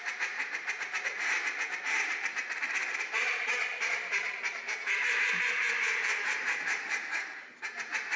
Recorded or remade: remade